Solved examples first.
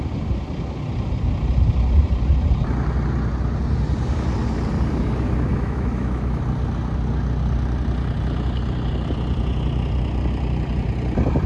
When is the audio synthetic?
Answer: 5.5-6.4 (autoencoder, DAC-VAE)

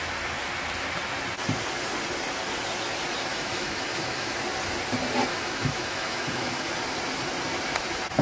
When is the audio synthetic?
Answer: 3.3-4.4 (autoencoder, DAC-VAE); 5.3-6.7